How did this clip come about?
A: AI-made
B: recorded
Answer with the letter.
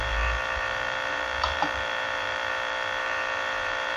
A